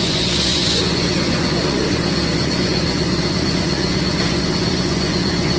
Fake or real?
fake